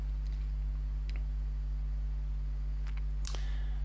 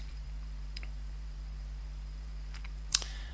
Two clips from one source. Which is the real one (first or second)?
first